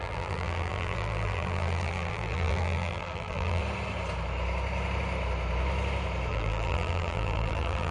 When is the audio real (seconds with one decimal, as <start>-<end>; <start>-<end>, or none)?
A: 3.6-6.3